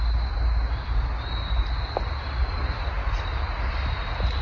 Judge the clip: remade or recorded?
recorded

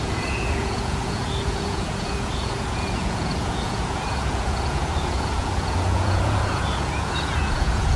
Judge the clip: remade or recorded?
remade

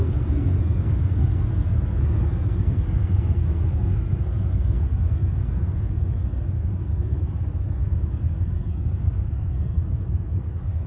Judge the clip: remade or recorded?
remade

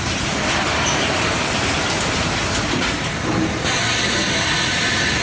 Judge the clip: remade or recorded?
recorded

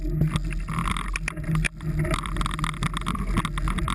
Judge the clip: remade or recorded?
recorded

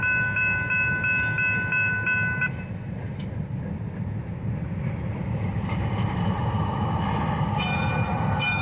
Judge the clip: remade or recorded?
recorded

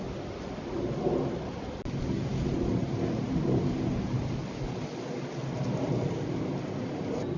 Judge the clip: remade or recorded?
recorded